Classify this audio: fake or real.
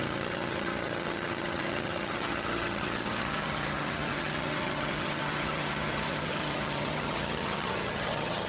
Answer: fake